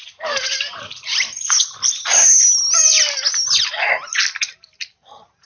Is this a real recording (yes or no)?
yes